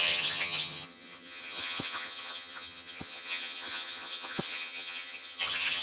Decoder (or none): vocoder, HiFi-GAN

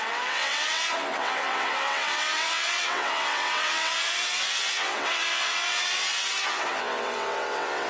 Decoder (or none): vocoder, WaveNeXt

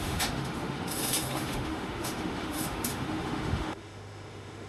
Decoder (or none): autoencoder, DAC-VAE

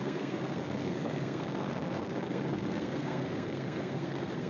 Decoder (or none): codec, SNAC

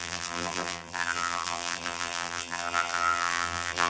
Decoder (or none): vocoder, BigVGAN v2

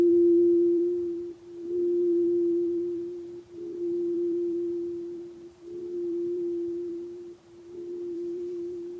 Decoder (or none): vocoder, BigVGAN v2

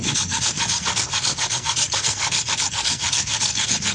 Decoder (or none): codec, SNAC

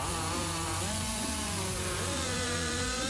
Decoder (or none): vocoder, Vocos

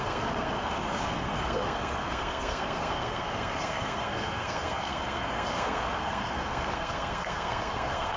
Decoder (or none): codec, SNAC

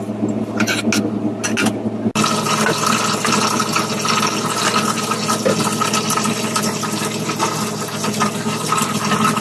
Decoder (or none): none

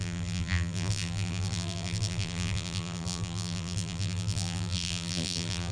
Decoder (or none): vocoder, BigVGAN v2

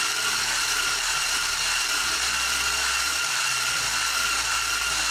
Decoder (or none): vocoder, BigVGAN v2